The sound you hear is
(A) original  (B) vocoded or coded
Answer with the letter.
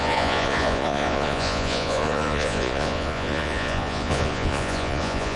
B